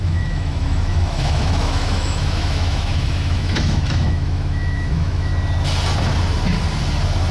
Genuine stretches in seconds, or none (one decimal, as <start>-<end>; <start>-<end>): 5.3-7.3